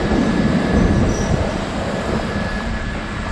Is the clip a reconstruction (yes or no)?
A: yes